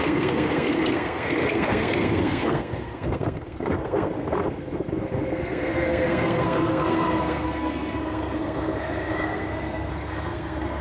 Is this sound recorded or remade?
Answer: remade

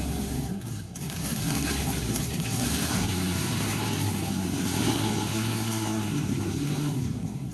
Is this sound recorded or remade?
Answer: remade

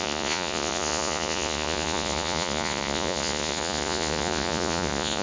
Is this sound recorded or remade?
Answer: remade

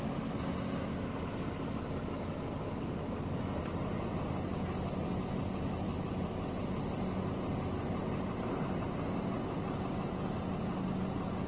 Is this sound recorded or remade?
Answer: recorded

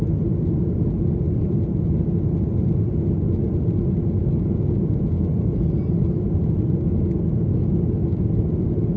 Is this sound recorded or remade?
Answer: recorded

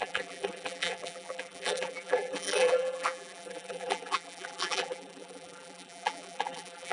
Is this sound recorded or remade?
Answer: remade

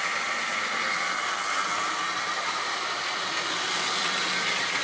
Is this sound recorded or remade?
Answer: recorded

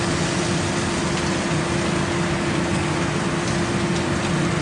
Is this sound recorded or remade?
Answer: recorded